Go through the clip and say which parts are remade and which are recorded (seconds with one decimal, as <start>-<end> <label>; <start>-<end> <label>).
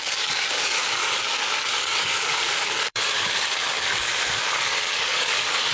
0.0-5.7 remade